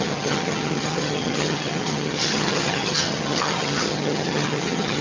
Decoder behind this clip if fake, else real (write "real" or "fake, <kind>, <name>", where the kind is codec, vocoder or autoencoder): fake, vocoder, HiFi-GAN